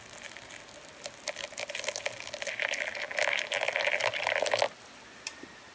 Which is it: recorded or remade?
recorded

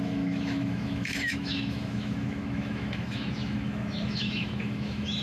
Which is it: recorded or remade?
remade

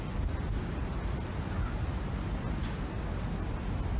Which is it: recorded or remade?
recorded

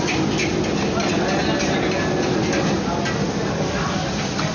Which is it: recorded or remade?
recorded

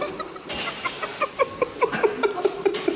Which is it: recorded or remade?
recorded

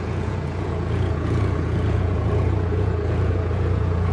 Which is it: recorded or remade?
remade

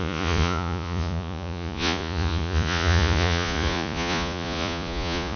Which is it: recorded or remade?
remade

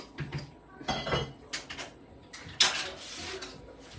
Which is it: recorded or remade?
recorded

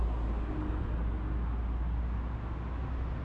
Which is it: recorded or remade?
recorded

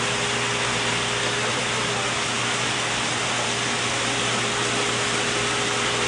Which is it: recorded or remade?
recorded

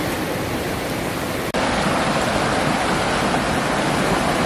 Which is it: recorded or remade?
recorded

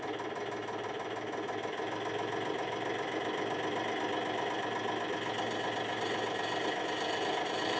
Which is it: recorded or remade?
recorded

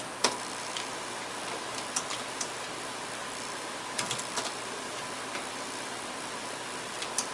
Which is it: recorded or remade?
recorded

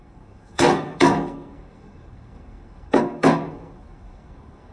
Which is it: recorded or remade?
remade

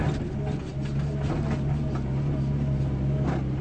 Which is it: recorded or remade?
recorded